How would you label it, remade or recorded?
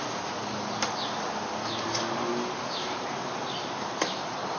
recorded